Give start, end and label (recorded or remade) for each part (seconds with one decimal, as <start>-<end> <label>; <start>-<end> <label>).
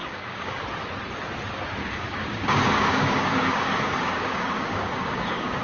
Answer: 0.0-0.6 remade; 0.6-1.8 recorded; 1.8-5.6 remade